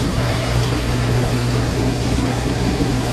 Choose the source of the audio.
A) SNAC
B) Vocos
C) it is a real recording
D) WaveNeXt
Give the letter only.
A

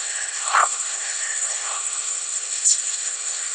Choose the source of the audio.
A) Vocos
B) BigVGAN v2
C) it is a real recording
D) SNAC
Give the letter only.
D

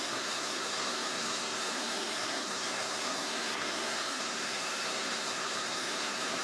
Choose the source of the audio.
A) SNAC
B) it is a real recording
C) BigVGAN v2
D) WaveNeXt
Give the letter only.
A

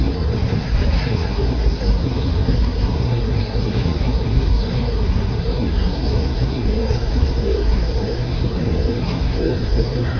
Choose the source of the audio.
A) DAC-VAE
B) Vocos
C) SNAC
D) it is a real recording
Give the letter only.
C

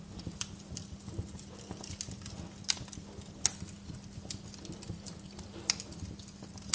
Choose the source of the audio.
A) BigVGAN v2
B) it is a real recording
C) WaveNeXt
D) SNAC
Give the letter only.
B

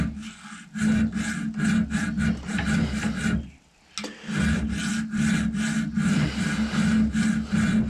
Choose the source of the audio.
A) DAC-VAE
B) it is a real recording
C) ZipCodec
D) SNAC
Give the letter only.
B